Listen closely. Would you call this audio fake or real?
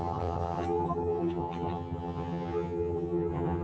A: fake